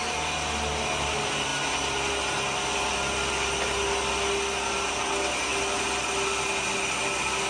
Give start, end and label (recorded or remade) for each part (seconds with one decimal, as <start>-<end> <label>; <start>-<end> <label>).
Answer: 0.0-7.5 recorded